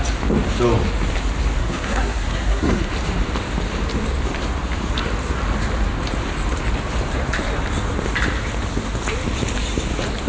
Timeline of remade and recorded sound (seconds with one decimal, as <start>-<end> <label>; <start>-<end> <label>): 0.0-1.6 recorded; 1.6-2.9 remade; 2.9-10.3 recorded